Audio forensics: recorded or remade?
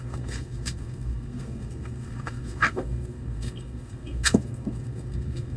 remade